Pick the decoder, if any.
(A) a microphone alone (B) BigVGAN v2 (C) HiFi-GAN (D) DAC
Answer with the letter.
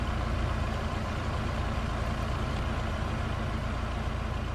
A